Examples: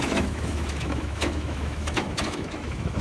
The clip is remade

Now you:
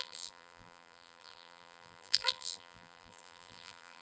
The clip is remade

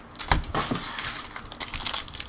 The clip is recorded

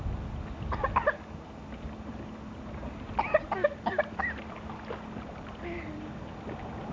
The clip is recorded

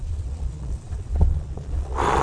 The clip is remade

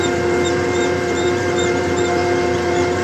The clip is remade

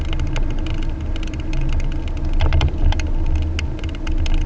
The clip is recorded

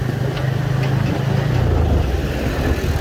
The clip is recorded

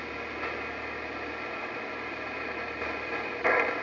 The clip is recorded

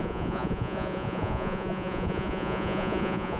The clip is remade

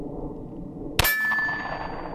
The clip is recorded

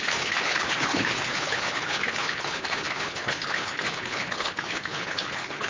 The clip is remade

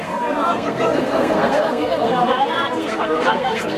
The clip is remade